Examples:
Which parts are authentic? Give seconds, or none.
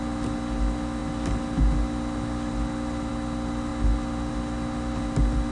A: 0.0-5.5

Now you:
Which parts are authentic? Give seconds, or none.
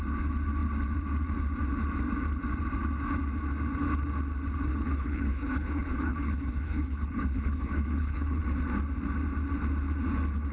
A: 0.0-4.7; 8.4-10.5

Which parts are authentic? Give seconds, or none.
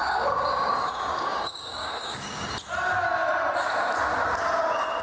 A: 2.5-5.0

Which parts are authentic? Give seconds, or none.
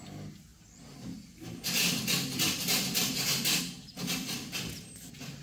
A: 0.0-5.4